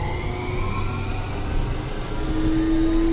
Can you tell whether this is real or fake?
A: real